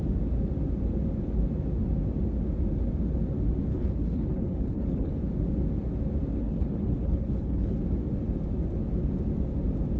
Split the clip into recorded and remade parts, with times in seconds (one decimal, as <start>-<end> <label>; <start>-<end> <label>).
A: 0.0-3.7 recorded; 3.7-5.1 remade; 5.1-6.3 recorded; 6.3-7.8 remade; 7.8-10.0 recorded